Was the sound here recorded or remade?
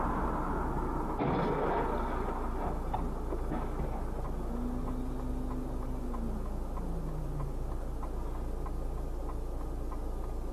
recorded